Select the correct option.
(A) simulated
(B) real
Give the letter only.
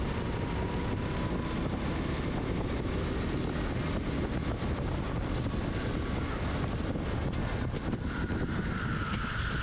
B